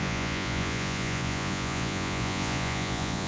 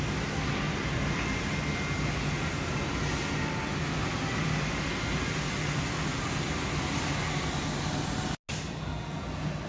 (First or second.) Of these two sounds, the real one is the second